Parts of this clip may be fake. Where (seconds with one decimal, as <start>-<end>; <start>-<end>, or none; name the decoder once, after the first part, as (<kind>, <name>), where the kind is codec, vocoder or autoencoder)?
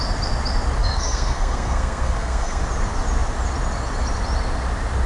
0.8-2.6 (codec, SNAC)